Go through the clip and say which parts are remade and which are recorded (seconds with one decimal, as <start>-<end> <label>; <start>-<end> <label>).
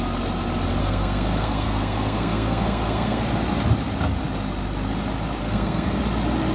0.0-0.8 recorded; 0.8-3.2 remade; 3.2-5.4 recorded; 5.4-6.0 remade; 6.0-6.5 recorded